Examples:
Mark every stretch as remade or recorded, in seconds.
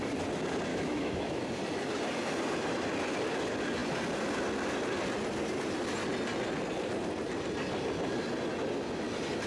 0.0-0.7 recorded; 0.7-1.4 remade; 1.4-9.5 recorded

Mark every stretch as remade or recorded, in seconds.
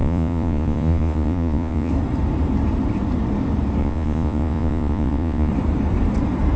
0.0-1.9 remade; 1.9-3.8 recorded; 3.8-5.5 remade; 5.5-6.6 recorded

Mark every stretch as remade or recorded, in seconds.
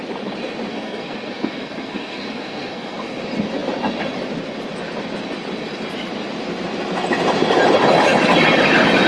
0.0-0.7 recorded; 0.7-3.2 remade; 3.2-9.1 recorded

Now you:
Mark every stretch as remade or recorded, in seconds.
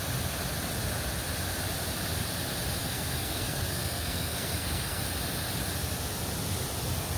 0.0-2.8 recorded; 2.8-5.0 remade; 5.0-7.2 recorded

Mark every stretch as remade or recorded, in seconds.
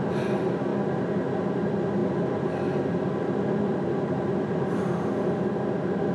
0.0-2.0 recorded; 2.0-4.6 remade; 4.6-6.1 recorded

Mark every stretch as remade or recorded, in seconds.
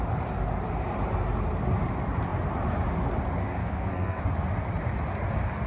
0.0-3.6 recorded; 3.6-4.2 remade; 4.2-5.7 recorded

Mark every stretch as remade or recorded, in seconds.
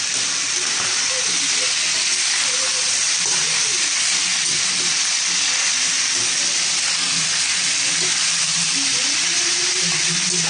0.0-10.5 recorded